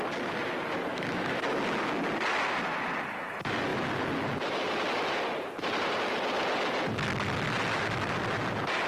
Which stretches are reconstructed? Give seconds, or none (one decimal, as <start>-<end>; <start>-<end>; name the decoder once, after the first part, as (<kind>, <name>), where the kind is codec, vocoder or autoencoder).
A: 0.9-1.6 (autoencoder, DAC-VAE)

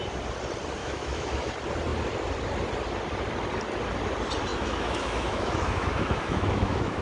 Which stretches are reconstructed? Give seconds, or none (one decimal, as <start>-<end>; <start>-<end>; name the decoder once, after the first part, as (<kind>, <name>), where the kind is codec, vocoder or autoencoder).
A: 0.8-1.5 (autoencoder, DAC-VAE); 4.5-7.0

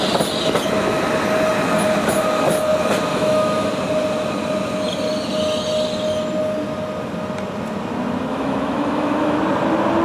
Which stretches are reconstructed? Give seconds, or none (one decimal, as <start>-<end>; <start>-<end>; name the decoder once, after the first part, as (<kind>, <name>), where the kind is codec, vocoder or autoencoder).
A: 3.1-3.7 (autoencoder, DAC-VAE); 8.3-9.4